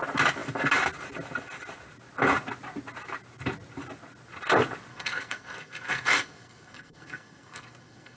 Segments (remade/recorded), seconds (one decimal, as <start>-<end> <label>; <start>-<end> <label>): 0.0-4.9 recorded; 4.9-8.2 remade